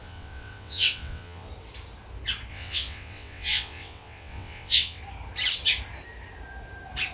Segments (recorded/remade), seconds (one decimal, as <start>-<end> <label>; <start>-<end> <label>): 0.0-1.5 remade; 1.5-2.5 recorded; 2.5-5.0 remade; 5.0-7.1 recorded